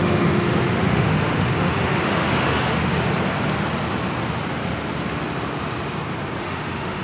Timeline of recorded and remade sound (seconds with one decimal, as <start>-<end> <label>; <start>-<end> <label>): 0.0-2.9 remade; 2.9-6.4 recorded; 6.4-7.0 remade

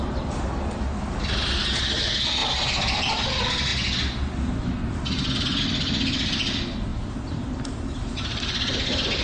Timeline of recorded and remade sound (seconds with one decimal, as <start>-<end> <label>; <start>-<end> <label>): 0.0-6.9 recorded; 6.9-9.2 remade

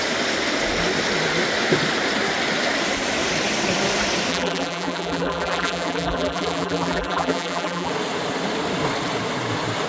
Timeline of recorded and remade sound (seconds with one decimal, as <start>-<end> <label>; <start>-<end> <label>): 0.0-4.3 recorded; 4.3-7.9 remade; 7.9-9.9 recorded